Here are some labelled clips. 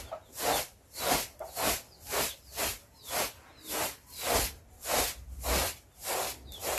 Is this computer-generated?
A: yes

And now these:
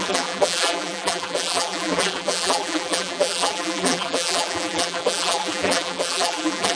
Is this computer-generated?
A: yes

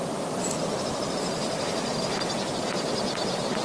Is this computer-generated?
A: no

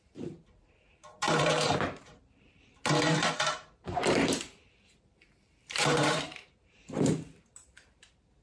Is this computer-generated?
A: yes